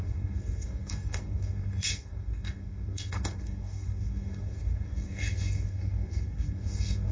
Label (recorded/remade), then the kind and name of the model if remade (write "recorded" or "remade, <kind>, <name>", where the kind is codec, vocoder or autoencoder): remade, codec, SNAC